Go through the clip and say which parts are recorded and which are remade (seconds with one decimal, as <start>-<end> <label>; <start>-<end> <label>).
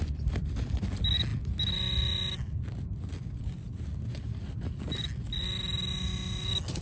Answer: 0.0-6.8 recorded